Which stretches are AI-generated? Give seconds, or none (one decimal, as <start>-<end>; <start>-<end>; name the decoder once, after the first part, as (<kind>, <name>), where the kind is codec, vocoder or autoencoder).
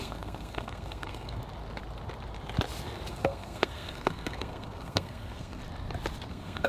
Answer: 0.0-1.4 (codec, SNAC); 3.1-5.6; 6.3-6.7